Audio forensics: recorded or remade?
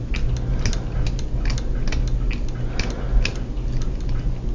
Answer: recorded